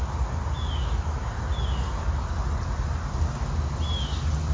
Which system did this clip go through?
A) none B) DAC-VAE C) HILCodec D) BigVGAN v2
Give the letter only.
A